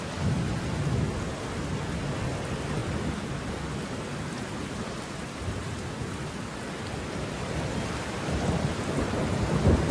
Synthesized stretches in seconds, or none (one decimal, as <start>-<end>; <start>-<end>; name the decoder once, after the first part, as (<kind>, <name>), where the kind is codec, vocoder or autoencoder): 2.8-3.5 (vocoder, BigVGAN v2); 7.2-8.8